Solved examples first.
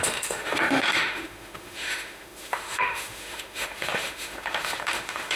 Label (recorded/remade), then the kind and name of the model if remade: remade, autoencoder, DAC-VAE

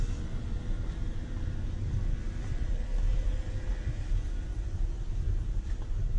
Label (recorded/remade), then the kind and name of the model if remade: recorded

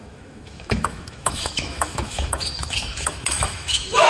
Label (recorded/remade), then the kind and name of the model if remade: remade, autoencoder, DAC-VAE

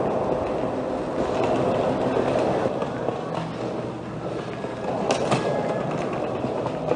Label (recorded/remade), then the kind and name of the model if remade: recorded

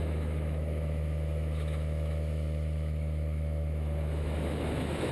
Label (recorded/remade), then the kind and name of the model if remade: remade, autoencoder, DAC-VAE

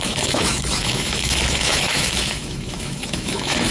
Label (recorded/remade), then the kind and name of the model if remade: remade, autoencoder, DAC-VAE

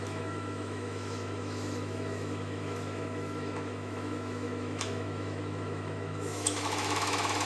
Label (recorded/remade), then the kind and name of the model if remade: remade, autoencoder, DAC-VAE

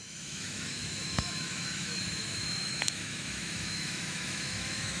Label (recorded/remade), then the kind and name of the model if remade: remade, autoencoder, DAC-VAE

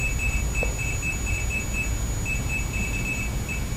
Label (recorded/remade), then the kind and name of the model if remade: recorded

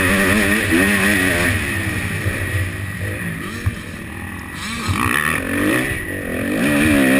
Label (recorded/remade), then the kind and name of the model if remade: recorded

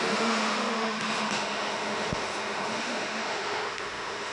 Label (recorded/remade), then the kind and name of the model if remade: remade, autoencoder, DAC-VAE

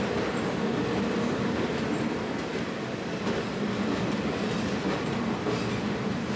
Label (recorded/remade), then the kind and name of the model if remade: recorded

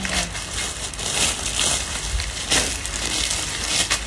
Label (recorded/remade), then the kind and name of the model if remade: recorded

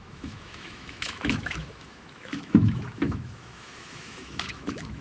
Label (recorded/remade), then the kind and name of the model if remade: remade, autoencoder, DAC-VAE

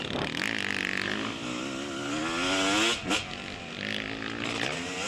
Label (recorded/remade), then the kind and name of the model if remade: recorded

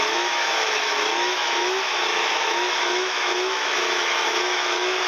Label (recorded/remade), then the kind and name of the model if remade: remade, autoencoder, DAC-VAE